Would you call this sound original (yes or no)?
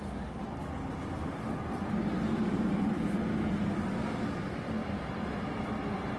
yes